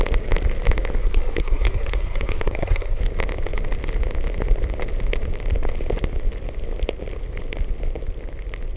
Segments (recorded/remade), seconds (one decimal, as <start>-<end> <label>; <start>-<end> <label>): 0.0-1.0 recorded; 1.0-3.0 remade; 3.0-8.8 recorded